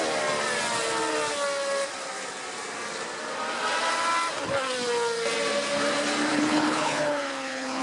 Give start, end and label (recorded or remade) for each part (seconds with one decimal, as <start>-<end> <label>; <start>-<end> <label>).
0.0-6.3 recorded; 6.3-7.8 remade